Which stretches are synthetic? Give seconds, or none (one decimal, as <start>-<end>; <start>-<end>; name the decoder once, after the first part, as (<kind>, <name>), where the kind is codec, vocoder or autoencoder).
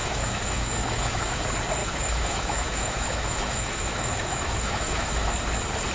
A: 0.0-1.4 (autoencoder, DAC-VAE); 1.8-5.3